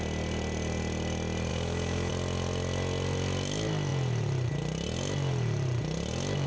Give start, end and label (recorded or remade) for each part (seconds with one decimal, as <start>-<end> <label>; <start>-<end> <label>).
0.0-1.5 recorded; 1.5-2.1 remade; 2.1-6.5 recorded